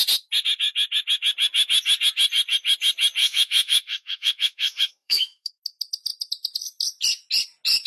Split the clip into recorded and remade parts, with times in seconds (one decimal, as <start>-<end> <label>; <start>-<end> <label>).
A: 0.0-3.2 recorded; 3.2-5.5 remade; 5.5-7.9 recorded